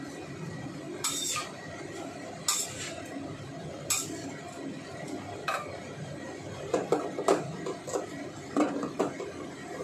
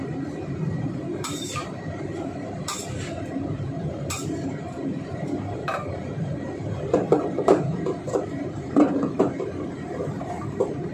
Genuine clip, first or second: first